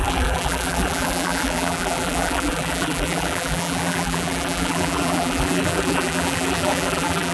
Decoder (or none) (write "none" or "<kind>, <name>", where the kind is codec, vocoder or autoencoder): vocoder, BigVGAN v2